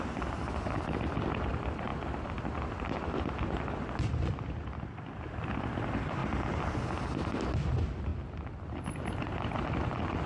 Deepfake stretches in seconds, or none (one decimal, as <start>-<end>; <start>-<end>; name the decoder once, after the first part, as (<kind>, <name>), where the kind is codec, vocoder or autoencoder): none